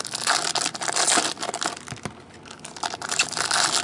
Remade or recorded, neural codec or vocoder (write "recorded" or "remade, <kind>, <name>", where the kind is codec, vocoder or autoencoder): recorded